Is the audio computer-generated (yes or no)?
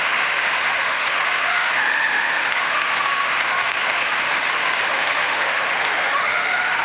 yes